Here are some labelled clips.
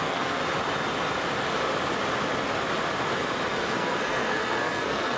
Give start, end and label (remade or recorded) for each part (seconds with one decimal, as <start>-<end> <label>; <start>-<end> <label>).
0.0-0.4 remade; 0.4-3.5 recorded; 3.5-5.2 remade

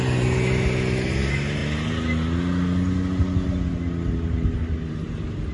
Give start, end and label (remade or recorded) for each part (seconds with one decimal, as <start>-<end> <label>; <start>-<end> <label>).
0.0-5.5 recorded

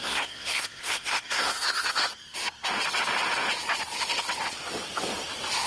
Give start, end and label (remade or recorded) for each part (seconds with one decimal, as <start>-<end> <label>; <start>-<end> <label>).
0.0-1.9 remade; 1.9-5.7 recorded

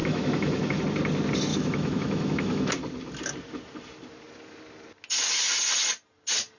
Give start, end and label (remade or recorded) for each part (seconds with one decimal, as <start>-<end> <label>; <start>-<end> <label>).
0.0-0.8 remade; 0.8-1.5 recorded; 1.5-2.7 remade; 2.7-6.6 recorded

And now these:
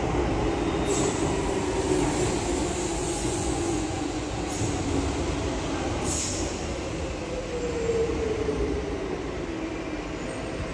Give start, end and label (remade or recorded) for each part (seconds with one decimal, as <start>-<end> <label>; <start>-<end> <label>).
0.0-3.0 recorded; 3.0-4.3 remade; 4.3-10.7 recorded